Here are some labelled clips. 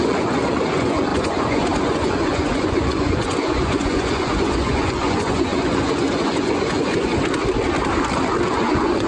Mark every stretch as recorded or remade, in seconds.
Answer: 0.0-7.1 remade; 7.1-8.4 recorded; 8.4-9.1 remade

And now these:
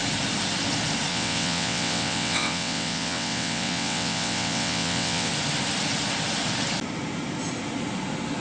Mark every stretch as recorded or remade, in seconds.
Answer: 0.0-1.1 recorded; 1.1-5.3 remade; 5.3-8.4 recorded

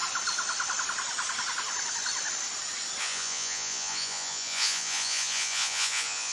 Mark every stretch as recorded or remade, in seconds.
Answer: 0.0-3.0 recorded; 3.0-6.3 remade